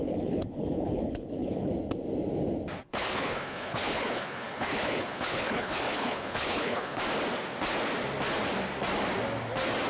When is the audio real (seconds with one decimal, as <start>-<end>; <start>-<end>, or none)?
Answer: 1.7-2.9; 7.0-9.9